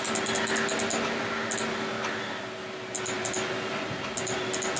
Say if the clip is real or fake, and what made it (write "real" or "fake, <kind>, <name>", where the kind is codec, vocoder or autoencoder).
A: real